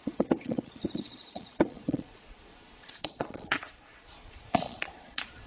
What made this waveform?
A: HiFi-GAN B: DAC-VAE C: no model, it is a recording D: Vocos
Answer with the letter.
D